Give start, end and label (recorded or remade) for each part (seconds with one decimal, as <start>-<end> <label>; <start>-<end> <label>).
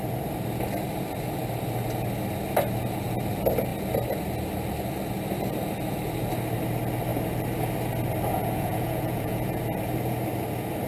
0.0-8.3 recorded; 8.3-9.6 remade; 9.6-10.9 recorded